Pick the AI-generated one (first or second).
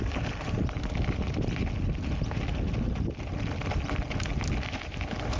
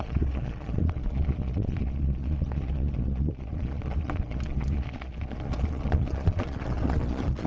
second